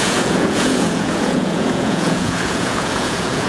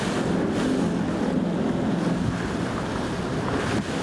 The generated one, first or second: first